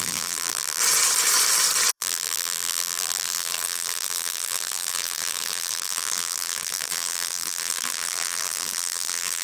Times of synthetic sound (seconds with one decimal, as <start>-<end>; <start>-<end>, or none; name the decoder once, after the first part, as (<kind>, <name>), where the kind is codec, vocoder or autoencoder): 0.0-0.8 (vocoder, BigVGAN v2); 1.9-9.4